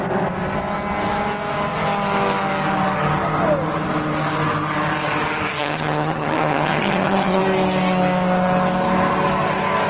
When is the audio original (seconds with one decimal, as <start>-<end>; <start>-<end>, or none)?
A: 0.0-5.6; 7.4-9.9